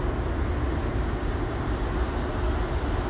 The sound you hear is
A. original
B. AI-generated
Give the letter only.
A